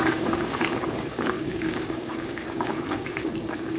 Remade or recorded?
remade